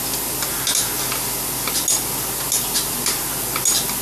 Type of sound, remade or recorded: recorded